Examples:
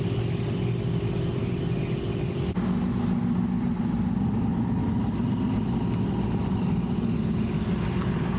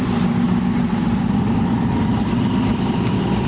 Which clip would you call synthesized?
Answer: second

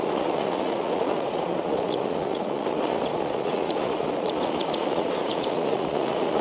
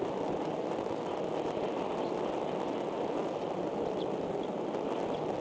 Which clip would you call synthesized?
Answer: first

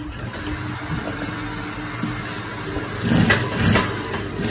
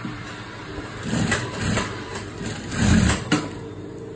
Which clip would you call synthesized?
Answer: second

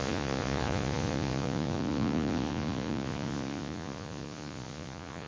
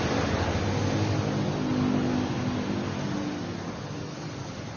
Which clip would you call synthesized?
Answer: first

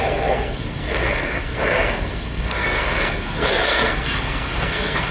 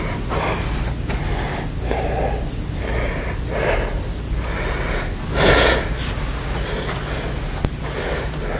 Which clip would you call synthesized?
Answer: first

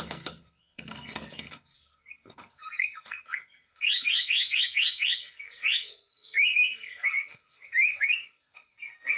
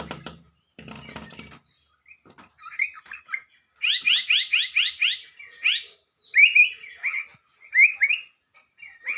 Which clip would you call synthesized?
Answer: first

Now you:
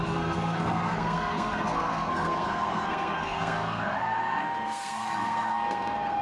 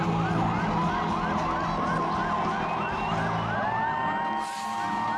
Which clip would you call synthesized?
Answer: first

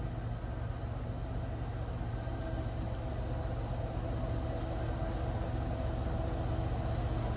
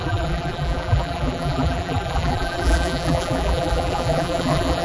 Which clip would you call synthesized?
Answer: second